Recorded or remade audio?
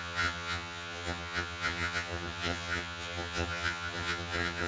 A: remade